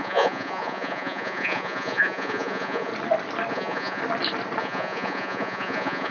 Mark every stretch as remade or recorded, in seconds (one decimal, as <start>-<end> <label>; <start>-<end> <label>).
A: 0.0-2.9 remade; 2.9-3.5 recorded; 3.5-4.0 remade; 4.0-4.6 recorded; 4.6-6.1 remade

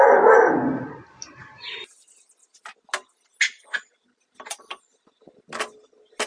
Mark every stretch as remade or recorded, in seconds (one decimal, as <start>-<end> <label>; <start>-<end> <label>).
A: 0.0-6.3 recorded

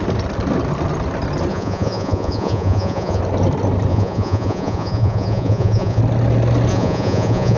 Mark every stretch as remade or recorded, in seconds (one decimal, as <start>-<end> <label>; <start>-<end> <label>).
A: 0.0-1.5 recorded; 1.5-3.2 remade; 3.2-3.9 recorded; 3.9-6.0 remade; 6.0-6.7 recorded; 6.7-7.6 remade

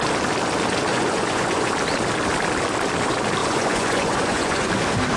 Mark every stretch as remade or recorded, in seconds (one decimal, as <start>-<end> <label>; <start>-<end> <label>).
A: 0.0-0.9 recorded; 0.9-1.7 remade; 1.7-3.4 recorded; 3.4-4.7 remade; 4.7-5.2 recorded